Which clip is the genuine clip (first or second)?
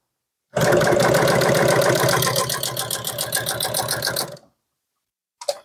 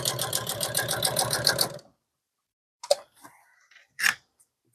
first